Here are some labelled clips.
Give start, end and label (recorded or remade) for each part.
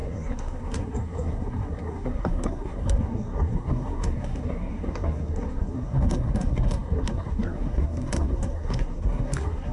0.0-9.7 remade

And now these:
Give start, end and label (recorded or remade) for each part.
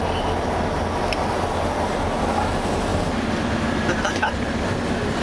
0.0-5.2 recorded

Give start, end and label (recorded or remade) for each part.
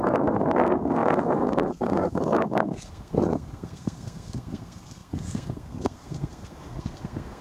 0.0-7.4 remade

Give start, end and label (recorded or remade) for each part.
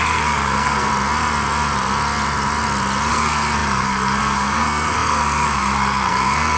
0.0-0.9 remade; 0.9-3.1 recorded; 3.1-6.6 remade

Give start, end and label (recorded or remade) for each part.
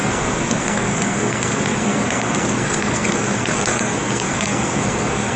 0.0-5.4 remade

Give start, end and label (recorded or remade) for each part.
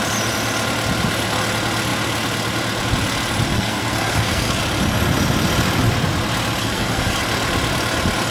0.0-3.5 recorded; 3.5-4.6 remade; 4.6-6.6 recorded; 6.6-7.2 remade; 7.2-8.3 recorded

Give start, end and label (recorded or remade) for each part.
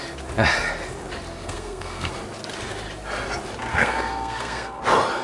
0.0-1.4 recorded; 1.4-2.1 remade; 2.1-3.7 recorded; 3.7-4.8 remade; 4.8-5.2 recorded